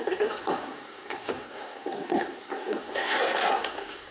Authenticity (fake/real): fake